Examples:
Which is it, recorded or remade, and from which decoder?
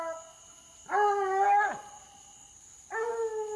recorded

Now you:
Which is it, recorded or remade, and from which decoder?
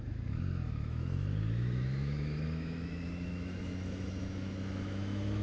remade, autoencoder, DAC-VAE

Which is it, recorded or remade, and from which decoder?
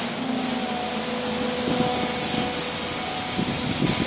recorded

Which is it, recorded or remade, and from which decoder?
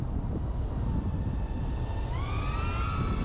recorded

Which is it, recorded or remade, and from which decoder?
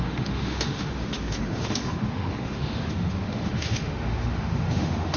remade, autoencoder, DAC-VAE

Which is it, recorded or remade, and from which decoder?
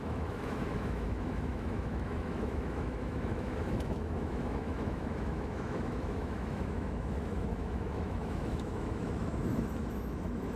remade, autoencoder, DAC-VAE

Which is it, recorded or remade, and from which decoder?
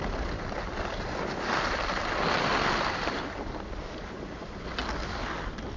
recorded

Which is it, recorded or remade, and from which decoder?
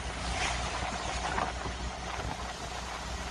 recorded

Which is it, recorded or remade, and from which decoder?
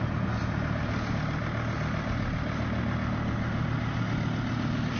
recorded